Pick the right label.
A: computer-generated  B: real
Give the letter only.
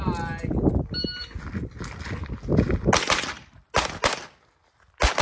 B